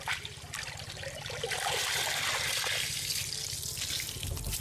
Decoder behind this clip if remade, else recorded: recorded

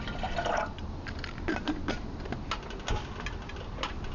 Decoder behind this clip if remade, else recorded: recorded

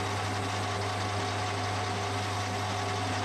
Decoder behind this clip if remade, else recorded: recorded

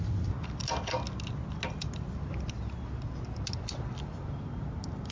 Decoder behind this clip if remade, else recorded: recorded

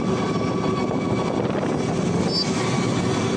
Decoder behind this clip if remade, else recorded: recorded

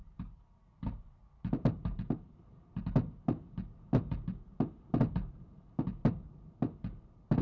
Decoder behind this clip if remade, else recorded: recorded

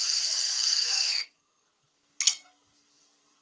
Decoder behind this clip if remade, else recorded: remade, codec, SNAC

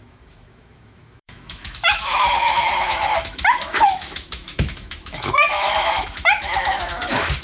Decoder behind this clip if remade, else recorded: remade, autoencoder, DAC-VAE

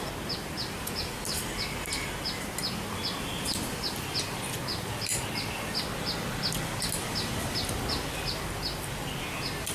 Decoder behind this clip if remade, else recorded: recorded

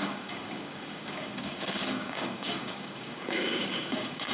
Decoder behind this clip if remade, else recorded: remade, codec, DAC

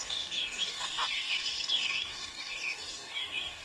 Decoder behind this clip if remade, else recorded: remade, codec, DAC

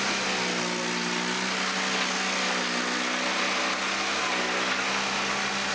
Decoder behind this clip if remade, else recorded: recorded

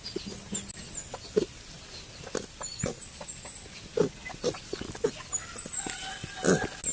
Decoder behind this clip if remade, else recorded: recorded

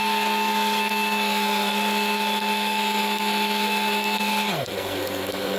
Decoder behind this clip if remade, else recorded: remade, codec, SNAC